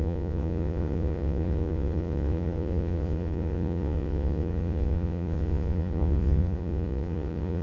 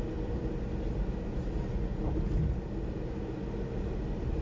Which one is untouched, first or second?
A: second